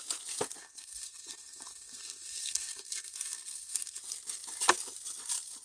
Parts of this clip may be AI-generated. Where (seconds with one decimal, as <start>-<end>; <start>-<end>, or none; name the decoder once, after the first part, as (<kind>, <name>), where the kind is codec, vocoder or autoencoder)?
0.6-4.0 (codec, SNAC)